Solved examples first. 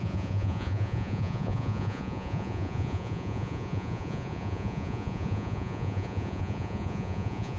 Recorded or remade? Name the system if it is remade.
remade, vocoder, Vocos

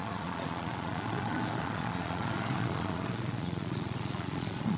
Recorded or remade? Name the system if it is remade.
remade, vocoder, Vocos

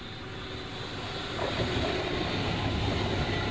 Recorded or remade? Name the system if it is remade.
recorded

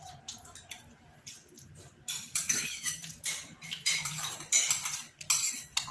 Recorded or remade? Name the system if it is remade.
recorded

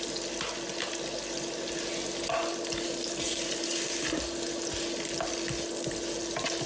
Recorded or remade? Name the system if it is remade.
recorded